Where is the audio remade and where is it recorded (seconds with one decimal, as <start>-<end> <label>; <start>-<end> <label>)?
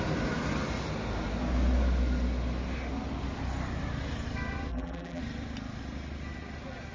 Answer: 0.0-4.7 recorded; 4.7-5.2 remade; 5.2-6.9 recorded